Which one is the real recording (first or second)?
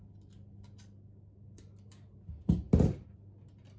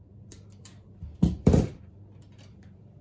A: first